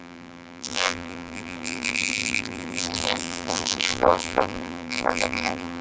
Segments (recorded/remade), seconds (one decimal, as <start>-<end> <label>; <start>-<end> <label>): 0.0-5.8 remade